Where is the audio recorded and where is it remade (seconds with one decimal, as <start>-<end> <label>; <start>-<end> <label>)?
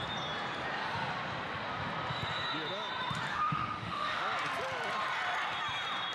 0.0-3.3 recorded; 3.3-4.2 remade; 4.2-6.1 recorded